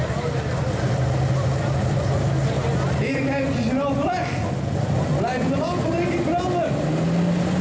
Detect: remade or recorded recorded